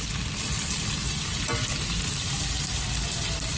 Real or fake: real